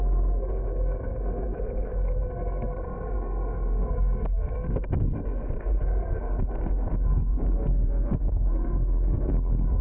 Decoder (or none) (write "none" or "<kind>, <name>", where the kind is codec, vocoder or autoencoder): codec, SNAC